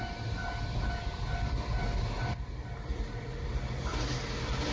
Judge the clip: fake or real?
real